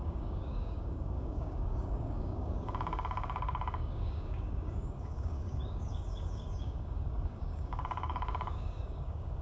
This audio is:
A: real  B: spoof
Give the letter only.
B